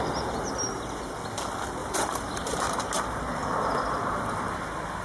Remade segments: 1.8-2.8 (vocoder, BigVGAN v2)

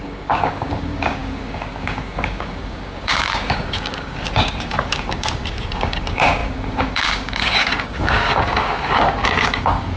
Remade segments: 0.0-10.0 (codec, DAC)

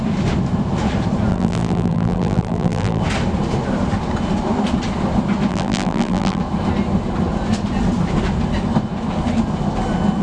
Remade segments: 1.3-3.0 (vocoder, BigVGAN v2); 5.5-6.4

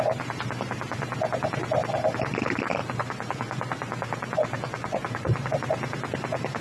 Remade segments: 2.8-5.5 (vocoder, Vocos)

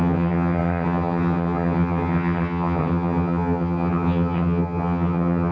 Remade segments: 0.0-5.5 (vocoder, HiFi-GAN)

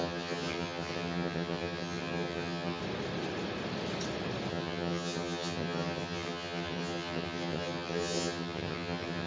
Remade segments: 0.0-2.8 (vocoder, HiFi-GAN); 4.5-9.3

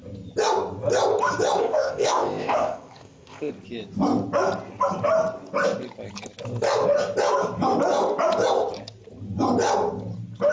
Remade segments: 1.6-3.5 (codec, ZipCodec)

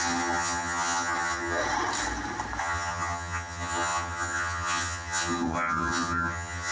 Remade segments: 0.0-1.6 (vocoder, HiFi-GAN); 2.6-6.7